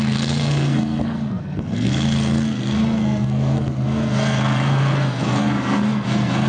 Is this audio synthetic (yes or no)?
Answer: yes